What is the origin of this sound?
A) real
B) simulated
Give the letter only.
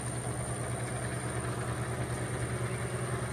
A